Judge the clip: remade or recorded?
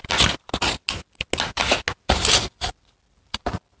recorded